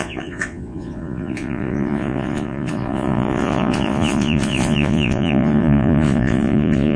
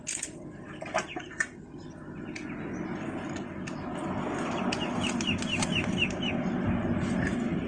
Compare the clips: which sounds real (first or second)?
second